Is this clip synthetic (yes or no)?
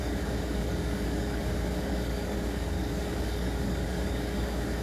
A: yes